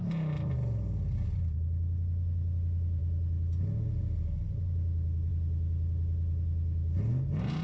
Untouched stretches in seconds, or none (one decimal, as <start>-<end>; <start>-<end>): 0.0-7.6

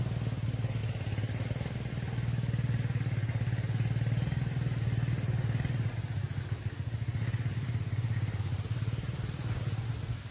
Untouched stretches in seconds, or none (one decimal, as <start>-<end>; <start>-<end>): 0.0-10.3